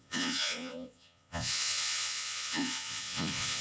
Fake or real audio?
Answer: fake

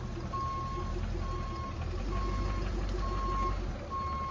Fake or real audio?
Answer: real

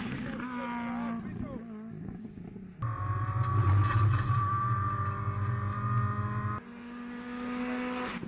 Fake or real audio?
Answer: real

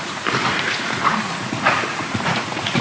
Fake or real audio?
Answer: fake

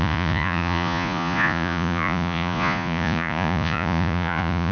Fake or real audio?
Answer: fake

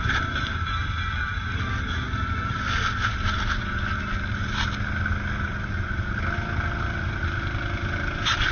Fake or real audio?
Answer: real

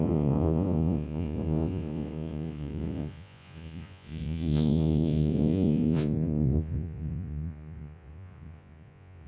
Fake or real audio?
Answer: fake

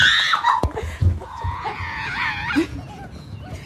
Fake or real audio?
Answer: fake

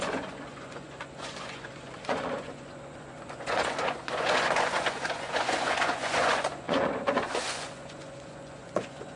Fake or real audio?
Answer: fake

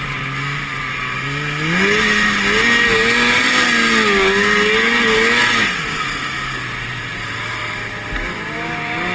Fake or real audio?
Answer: real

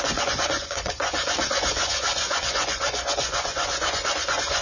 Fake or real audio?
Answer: fake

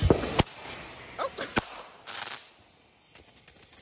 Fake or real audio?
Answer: real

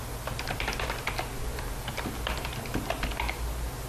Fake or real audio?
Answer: real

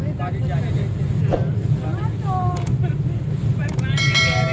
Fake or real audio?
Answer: real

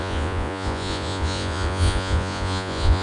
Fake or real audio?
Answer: fake